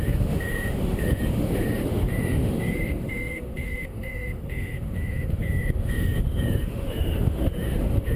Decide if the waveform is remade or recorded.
remade